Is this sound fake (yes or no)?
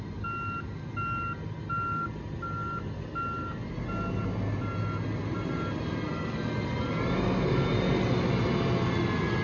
no